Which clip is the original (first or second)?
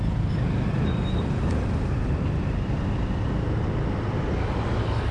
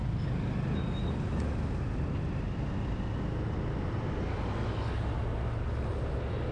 second